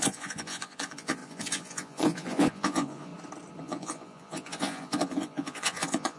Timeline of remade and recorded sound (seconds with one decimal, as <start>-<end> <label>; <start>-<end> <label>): 0.0-3.1 remade; 3.1-3.6 recorded; 3.6-6.2 remade